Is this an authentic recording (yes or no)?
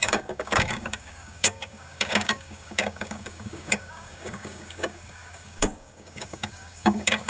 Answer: no